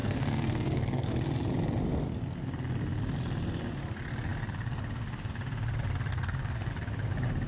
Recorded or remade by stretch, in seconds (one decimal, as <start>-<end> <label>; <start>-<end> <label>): 0.0-1.1 remade; 1.1-6.1 recorded; 6.1-6.7 remade; 6.7-7.5 recorded